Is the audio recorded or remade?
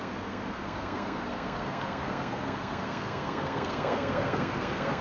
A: remade